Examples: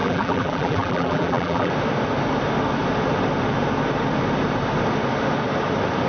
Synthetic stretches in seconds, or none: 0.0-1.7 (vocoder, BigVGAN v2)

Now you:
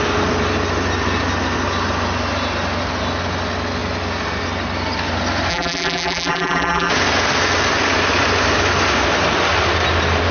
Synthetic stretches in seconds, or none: 5.5-6.9 (vocoder, BigVGAN v2)

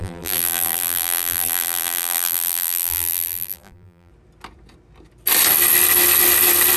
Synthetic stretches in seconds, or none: 0.0-4.1 (vocoder, BigVGAN v2)

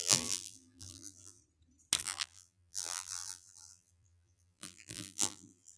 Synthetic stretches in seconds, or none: 0.0-1.4 (vocoder, BigVGAN v2); 2.0-5.8

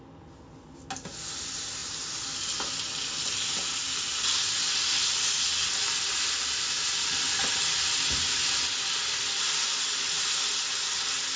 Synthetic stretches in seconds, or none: none

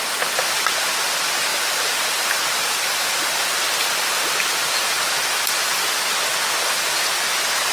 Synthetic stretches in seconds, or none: 1.5-4.3 (vocoder, BigVGAN v2); 5.6-6.1